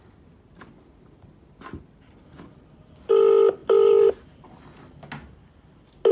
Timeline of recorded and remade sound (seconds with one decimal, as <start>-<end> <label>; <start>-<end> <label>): 0.0-3.6 recorded; 3.6-4.1 remade; 4.1-6.1 recorded